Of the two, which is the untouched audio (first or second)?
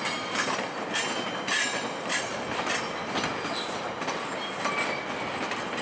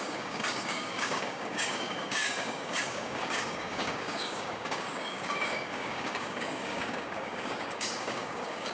first